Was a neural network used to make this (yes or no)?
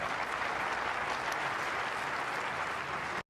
no